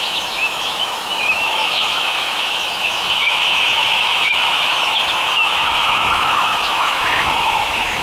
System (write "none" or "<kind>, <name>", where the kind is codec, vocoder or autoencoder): autoencoder, DAC-VAE